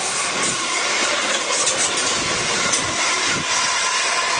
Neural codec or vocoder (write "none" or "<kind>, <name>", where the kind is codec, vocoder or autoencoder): none